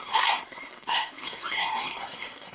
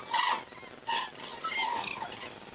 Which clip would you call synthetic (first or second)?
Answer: first